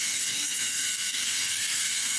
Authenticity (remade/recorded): remade